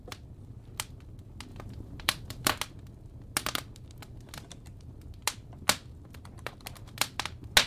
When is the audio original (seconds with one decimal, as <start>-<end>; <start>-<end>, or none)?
0.0-1.5; 2.5-7.7